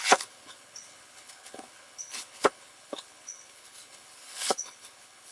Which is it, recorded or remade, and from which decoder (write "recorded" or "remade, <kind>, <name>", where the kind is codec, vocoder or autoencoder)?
remade, codec, HILCodec